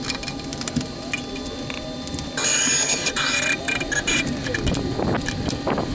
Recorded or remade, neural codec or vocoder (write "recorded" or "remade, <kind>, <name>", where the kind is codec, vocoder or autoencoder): recorded